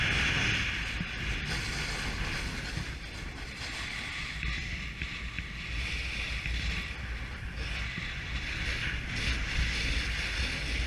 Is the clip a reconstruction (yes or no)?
no